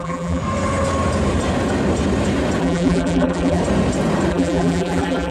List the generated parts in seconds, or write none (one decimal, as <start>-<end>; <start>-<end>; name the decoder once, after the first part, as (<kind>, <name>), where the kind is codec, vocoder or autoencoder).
0.0-0.4 (vocoder, BigVGAN v2); 2.6-3.6; 4.3-5.3